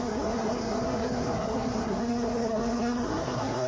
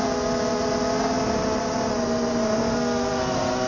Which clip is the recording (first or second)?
second